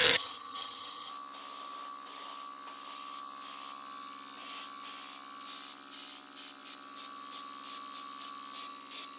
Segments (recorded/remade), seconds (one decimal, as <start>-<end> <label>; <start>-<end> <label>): 0.0-1.1 remade; 1.1-9.2 recorded